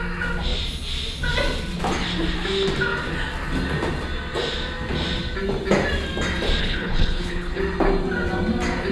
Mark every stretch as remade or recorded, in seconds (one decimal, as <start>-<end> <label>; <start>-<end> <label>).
0.0-6.6 recorded; 6.6-7.6 remade; 7.6-8.9 recorded